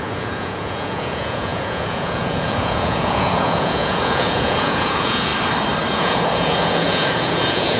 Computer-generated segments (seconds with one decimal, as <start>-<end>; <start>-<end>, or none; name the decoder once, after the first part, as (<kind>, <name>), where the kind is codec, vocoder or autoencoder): 0.0-5.3 (vocoder, Vocos); 5.9-7.8